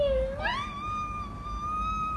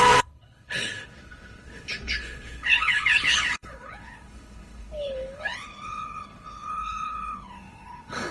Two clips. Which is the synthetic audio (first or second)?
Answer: second